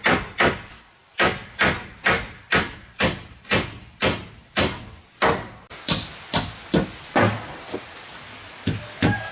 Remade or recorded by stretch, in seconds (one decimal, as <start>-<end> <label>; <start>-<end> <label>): 0.0-9.3 recorded

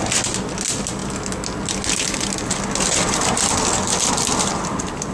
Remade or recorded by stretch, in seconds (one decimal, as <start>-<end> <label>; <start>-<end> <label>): 0.0-5.1 recorded

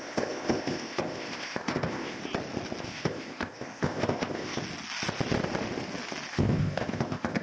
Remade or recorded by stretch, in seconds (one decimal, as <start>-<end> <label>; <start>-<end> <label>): 0.0-2.2 remade; 2.2-2.8 recorded; 2.8-4.6 remade; 4.6-6.3 recorded; 6.3-7.4 remade

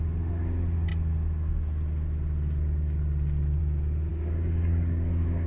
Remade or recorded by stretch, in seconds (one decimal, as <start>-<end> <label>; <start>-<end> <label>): 0.0-4.1 recorded; 4.1-5.5 remade

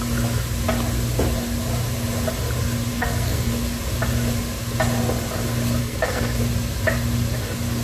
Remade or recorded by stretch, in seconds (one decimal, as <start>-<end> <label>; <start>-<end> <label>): 0.0-2.9 recorded; 2.9-3.5 remade; 3.5-5.8 recorded; 5.8-6.4 remade; 6.4-7.8 recorded

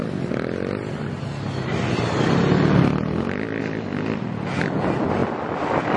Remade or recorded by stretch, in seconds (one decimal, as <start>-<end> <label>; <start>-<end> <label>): 0.0-5.2 recorded; 5.2-6.0 remade

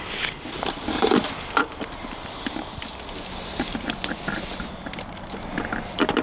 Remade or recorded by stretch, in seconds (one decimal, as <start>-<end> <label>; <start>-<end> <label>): 0.0-6.2 recorded

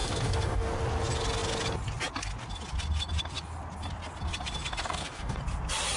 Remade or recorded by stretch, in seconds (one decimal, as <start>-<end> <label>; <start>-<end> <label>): 0.0-0.7 remade; 0.7-4.8 recorded; 4.8-5.4 remade; 5.4-6.0 recorded